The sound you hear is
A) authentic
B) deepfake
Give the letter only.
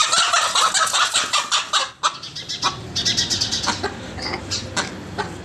A